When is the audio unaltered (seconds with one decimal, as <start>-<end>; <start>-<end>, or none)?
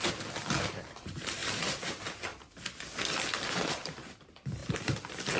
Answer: 2.3-3.5